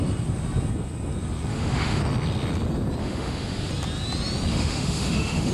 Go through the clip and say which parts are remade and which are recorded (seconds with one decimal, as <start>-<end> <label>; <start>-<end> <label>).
0.0-1.5 recorded; 1.5-2.0 remade; 2.0-3.0 recorded; 3.0-3.7 remade; 3.7-4.5 recorded; 4.5-5.5 remade